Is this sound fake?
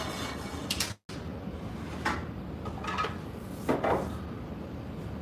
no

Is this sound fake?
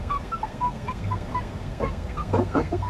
yes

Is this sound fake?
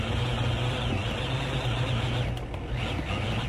no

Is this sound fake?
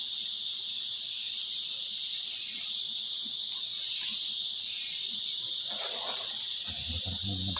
yes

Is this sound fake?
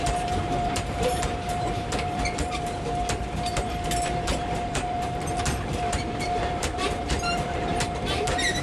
yes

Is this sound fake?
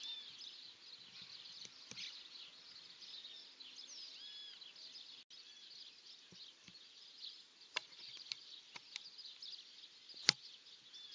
no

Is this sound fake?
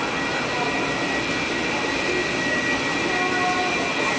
no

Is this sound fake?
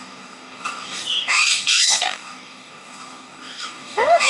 yes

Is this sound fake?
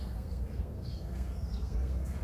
yes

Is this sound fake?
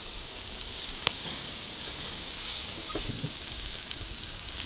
yes